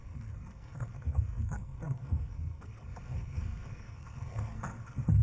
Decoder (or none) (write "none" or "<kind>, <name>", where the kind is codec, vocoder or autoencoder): codec, SNAC